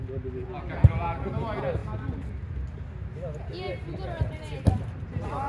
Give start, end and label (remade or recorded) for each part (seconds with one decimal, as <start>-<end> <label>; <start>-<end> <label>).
0.0-5.5 recorded